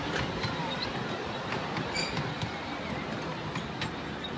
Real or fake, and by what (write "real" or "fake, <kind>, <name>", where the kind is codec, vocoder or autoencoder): real